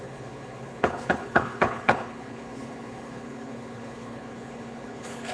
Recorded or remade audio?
remade